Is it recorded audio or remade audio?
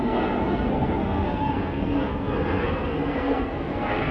remade